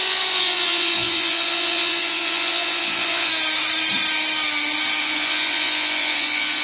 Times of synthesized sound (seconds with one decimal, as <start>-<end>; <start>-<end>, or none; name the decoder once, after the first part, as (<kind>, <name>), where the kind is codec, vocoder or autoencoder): 0.0-3.3 (vocoder, Vocos); 5.0-6.6